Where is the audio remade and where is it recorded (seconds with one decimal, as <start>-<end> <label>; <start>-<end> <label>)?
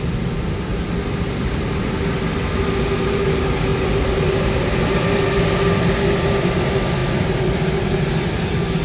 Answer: 0.0-8.8 recorded